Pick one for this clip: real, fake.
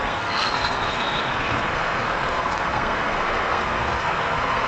fake